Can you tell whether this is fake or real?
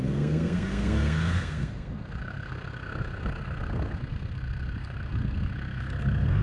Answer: fake